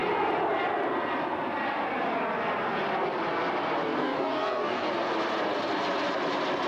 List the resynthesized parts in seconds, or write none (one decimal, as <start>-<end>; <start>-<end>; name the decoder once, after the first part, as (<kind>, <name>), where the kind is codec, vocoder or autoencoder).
3.9-4.9 (codec, DAC)